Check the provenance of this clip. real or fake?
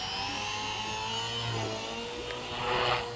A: real